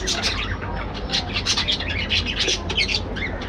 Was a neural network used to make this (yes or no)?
no